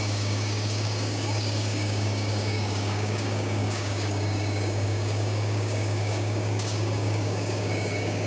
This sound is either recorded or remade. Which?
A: remade